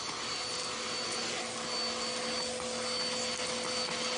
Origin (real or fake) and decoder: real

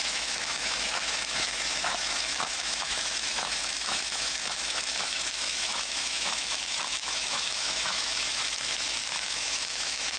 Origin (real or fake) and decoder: fake, autoencoder, DAC-VAE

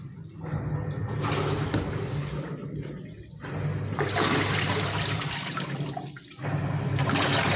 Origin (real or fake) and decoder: real